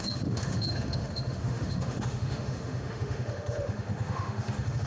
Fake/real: fake